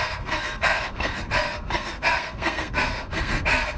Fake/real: fake